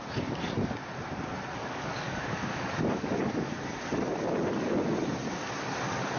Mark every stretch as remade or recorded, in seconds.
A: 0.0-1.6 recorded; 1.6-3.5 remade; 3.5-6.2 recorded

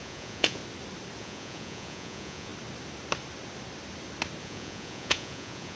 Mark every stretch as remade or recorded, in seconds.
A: 0.0-0.6 remade; 0.6-1.2 recorded; 1.2-2.5 remade; 2.5-4.4 recorded; 4.4-5.8 remade

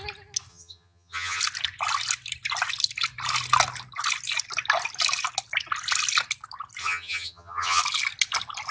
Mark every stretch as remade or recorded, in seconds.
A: 0.0-0.5 recorded; 0.5-1.4 remade; 1.4-6.8 recorded; 6.8-7.8 remade; 7.8-8.7 recorded

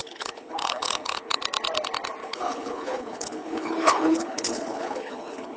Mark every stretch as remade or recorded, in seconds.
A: 0.0-1.4 remade; 1.4-2.2 recorded; 2.2-5.6 remade

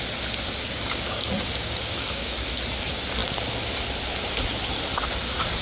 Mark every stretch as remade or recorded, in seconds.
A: 0.0-0.6 recorded; 0.6-2.5 remade; 2.5-5.6 recorded

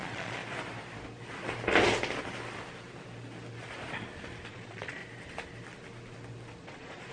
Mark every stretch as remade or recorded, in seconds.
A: 0.0-0.4 remade; 0.4-4.5 recorded; 4.5-5.0 remade; 5.0-6.6 recorded; 6.6-7.1 remade

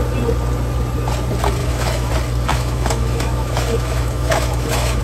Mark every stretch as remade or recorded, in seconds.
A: 0.0-1.6 recorded; 1.6-2.1 remade; 2.1-2.5 recorded; 2.5-5.0 remade

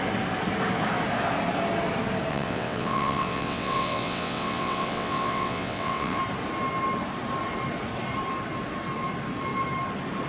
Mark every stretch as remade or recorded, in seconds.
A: 0.0-2.3 recorded; 2.3-6.2 remade; 6.2-10.3 recorded